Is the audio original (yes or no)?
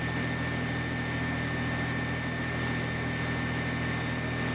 yes